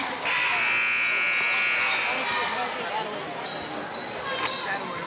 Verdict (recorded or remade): recorded